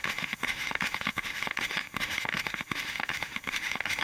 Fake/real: fake